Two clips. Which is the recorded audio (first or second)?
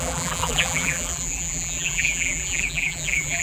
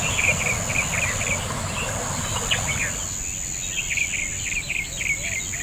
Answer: second